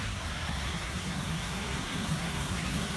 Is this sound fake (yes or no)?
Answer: yes